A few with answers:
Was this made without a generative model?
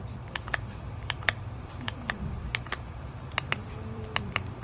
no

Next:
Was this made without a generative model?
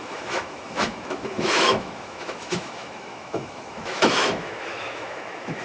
no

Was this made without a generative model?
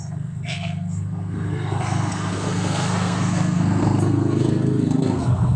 no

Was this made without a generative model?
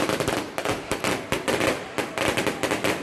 yes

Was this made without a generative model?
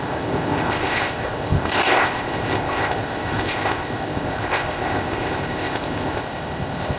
no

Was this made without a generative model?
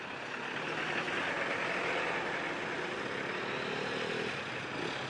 yes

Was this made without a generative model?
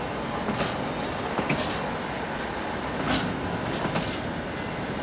yes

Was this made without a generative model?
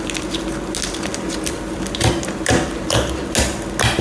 yes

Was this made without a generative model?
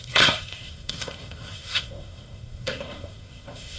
no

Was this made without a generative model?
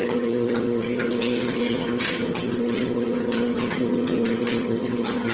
no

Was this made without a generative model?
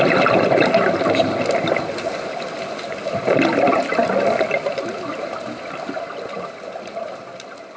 yes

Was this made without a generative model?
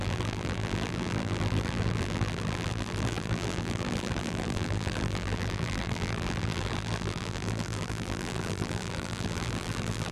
no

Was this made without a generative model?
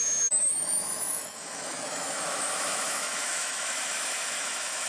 no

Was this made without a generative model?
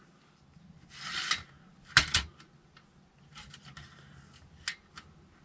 yes